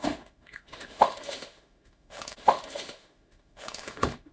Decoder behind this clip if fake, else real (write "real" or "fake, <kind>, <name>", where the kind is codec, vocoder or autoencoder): fake, autoencoder, DAC-VAE